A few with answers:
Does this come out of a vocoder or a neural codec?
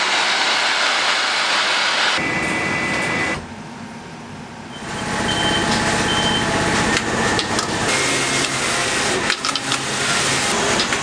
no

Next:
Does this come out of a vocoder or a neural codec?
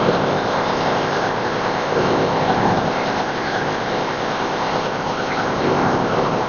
yes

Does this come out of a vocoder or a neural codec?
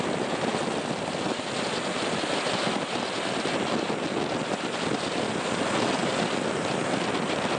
no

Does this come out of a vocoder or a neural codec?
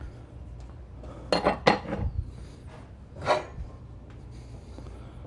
no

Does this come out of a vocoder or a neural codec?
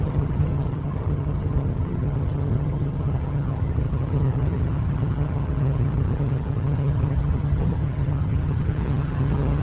yes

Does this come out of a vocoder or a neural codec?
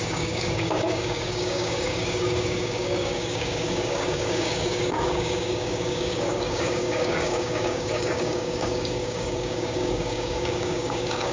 yes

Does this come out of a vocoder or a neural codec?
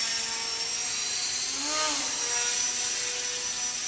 no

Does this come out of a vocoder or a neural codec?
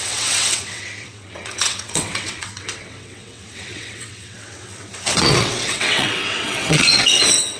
yes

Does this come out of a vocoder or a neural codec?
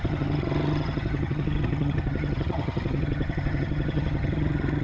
yes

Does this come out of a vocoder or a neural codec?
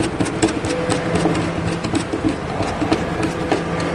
no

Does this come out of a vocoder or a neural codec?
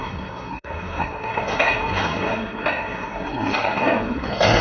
yes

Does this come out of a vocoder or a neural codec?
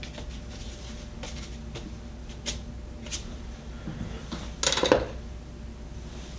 no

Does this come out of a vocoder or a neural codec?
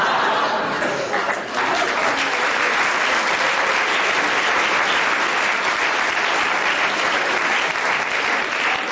no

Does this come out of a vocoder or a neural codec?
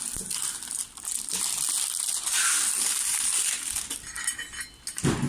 no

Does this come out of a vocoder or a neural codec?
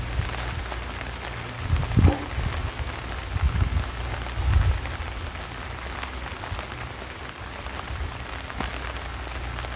no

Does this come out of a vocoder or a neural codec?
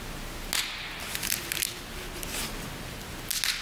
no